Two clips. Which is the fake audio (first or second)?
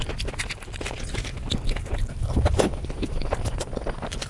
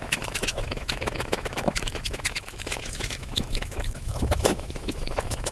second